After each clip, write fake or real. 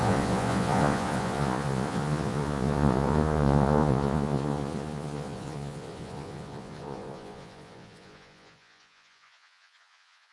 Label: fake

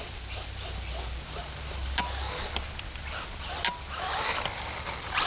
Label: real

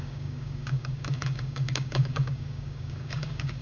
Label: fake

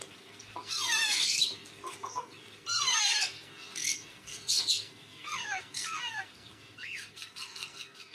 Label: fake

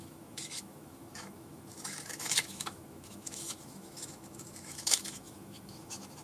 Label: fake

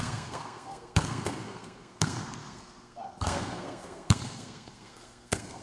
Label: fake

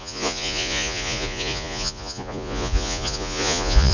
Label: fake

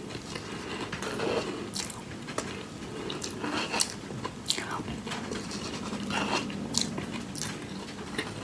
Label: real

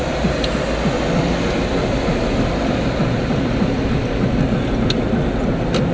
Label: real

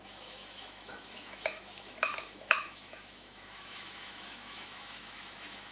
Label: fake